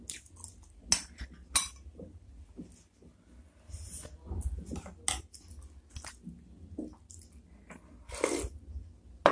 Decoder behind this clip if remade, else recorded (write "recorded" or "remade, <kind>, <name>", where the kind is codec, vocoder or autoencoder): recorded